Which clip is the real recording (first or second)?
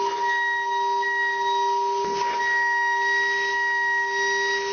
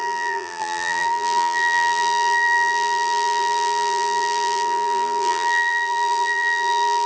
first